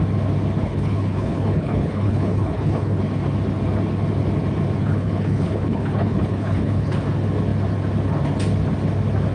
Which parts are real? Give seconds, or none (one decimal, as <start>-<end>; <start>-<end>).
0.0-0.6; 3.0-4.8; 7.0-9.3